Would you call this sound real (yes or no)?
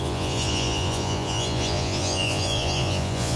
no